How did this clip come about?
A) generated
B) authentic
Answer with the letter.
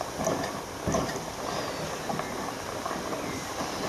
B